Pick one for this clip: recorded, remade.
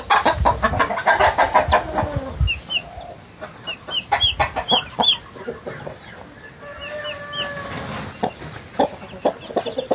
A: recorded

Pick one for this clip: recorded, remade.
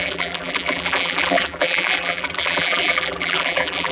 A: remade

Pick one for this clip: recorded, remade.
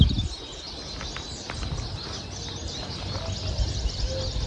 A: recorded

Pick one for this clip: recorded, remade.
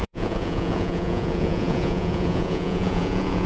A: remade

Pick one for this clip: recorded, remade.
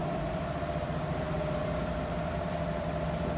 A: remade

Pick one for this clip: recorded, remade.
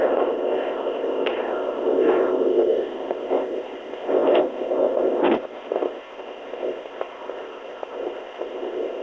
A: remade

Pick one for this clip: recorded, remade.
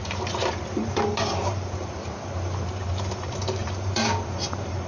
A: remade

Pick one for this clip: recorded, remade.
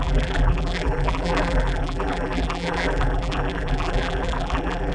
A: remade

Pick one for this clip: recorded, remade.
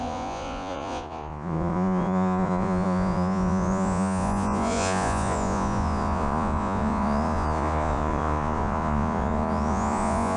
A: remade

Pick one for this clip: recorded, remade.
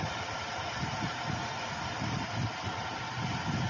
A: recorded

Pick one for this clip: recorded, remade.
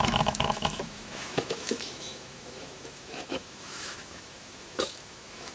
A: remade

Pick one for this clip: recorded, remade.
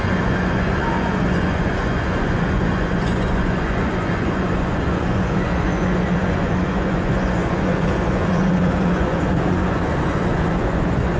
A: remade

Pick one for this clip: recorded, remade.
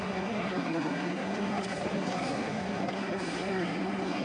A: remade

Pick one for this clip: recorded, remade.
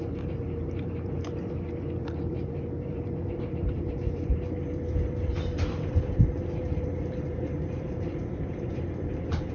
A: remade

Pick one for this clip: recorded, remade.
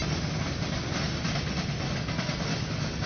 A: recorded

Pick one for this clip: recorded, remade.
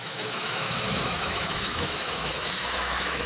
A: remade